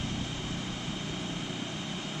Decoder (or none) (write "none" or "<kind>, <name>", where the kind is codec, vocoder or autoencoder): none